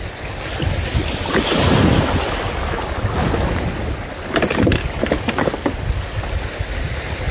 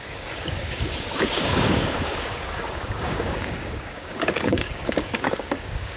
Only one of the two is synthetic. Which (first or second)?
second